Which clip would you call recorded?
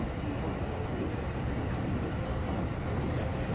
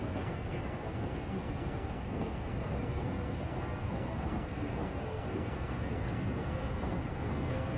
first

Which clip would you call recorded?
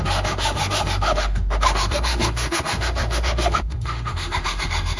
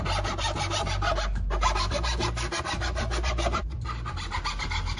second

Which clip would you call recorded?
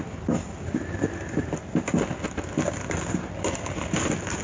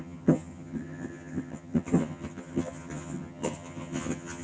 first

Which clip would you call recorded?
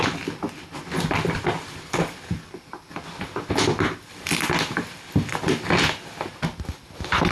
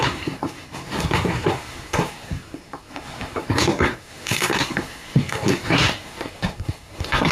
first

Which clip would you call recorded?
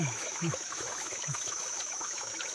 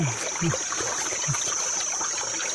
second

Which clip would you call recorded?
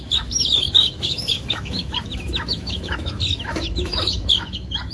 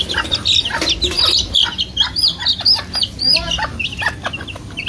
second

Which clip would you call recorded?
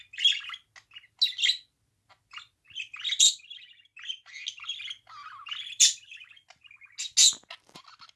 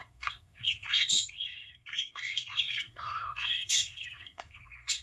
first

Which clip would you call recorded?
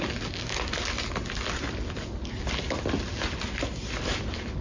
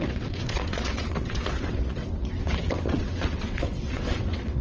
first